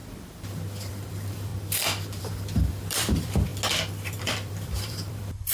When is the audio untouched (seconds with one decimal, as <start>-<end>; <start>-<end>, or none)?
0.0-0.9; 1.5-2.2; 3.5-4.1